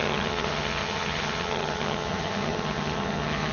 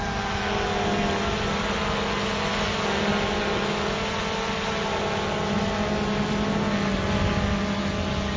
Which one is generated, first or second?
first